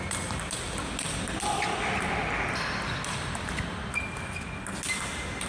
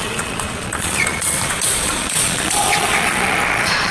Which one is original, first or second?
first